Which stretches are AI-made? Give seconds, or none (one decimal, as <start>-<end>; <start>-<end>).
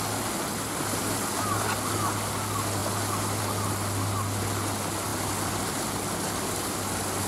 none